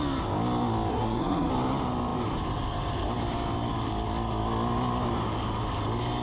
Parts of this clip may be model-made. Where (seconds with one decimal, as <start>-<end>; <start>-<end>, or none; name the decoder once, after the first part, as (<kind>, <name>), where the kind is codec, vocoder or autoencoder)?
0.9-1.5 (codec, SNAC)